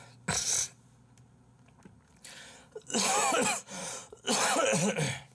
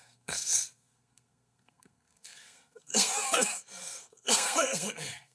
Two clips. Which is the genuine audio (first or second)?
first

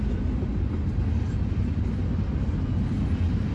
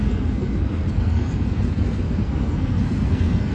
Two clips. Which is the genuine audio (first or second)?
first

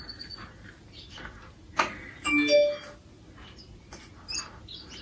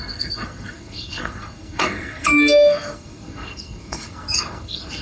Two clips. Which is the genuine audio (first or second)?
first